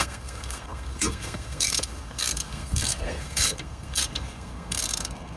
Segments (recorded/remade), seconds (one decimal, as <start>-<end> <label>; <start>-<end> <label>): 0.0-5.4 remade